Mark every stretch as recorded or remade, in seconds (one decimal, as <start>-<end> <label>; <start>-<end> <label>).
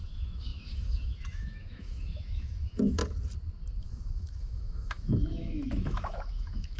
0.0-3.0 remade; 3.0-3.8 recorded; 3.8-6.8 remade